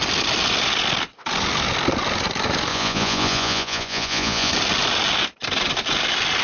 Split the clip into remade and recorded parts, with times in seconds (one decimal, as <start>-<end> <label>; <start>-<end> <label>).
0.0-2.7 recorded; 2.7-4.5 remade; 4.5-6.4 recorded